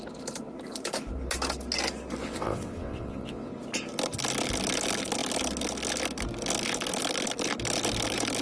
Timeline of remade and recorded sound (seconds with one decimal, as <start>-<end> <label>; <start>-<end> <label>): 0.0-2.2 recorded; 2.2-3.5 remade; 3.5-8.4 recorded